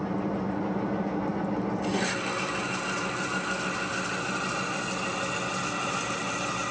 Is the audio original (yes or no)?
yes